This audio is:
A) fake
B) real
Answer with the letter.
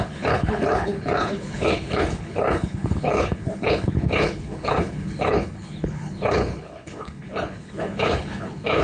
A